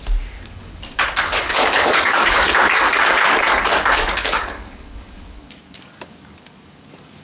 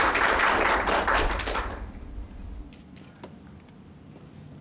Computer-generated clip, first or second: first